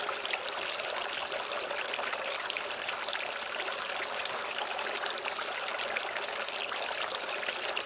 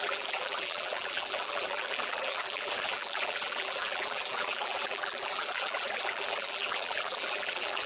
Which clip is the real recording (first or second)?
first